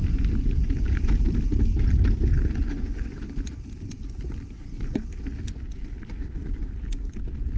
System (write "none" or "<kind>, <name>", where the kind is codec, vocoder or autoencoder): none